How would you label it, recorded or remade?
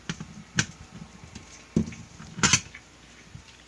recorded